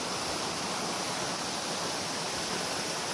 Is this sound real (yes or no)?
yes